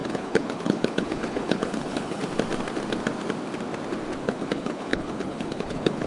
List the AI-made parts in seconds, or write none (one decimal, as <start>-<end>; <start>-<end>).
0.0-2.2; 4.2-6.1